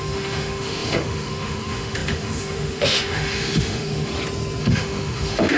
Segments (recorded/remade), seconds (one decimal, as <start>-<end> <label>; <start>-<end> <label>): 0.0-4.1 remade; 4.1-4.6 recorded; 4.6-5.6 remade